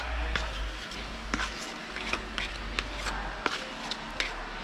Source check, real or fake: real